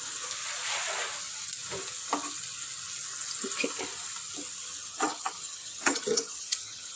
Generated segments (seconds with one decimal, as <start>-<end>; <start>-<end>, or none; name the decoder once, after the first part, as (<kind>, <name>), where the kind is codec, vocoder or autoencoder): 4.8-7.0 (vocoder, HiFi-GAN)